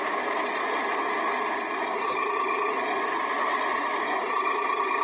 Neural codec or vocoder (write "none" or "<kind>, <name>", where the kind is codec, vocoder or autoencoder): none